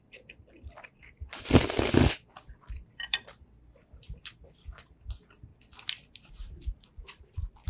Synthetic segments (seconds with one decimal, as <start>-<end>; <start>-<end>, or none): 0.0-5.5; 6.3-7.7